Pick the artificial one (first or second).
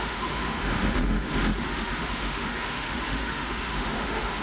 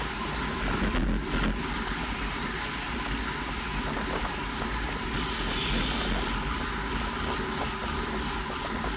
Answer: first